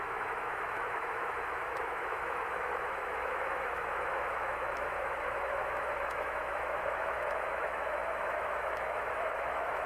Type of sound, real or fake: fake